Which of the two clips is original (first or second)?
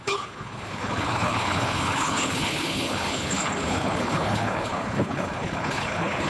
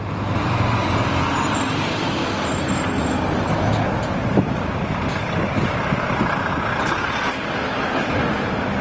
second